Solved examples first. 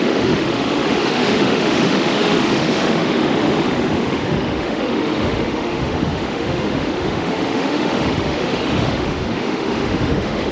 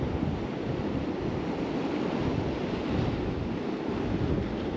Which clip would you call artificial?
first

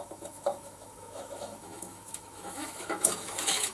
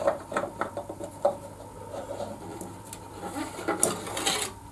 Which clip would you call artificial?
first